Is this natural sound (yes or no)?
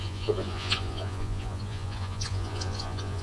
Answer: no